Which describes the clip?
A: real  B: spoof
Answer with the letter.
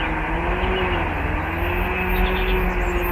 A